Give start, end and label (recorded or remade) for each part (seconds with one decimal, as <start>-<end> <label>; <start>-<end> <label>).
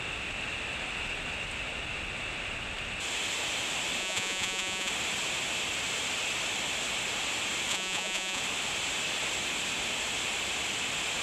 0.0-4.0 recorded; 4.0-4.9 remade; 4.9-7.7 recorded; 7.7-8.4 remade; 8.4-11.2 recorded